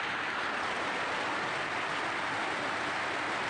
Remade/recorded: recorded